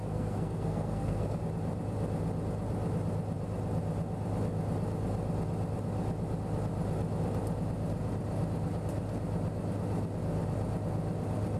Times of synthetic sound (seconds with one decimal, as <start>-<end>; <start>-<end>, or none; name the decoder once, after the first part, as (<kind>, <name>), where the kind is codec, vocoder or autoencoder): 0.0-1.4 (codec, SNAC)